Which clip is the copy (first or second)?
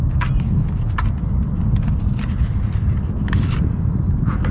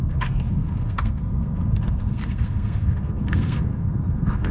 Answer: second